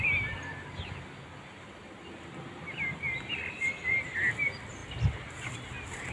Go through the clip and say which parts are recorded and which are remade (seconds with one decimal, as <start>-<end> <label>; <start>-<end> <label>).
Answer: 0.0-6.1 recorded